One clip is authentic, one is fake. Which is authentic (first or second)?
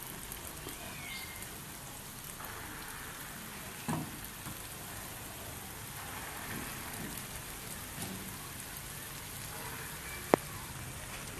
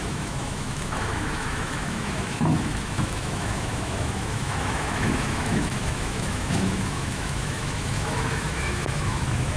first